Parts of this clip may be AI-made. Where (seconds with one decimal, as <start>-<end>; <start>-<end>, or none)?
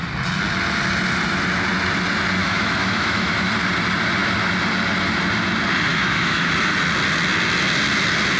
2.4-3.5; 5.9-6.5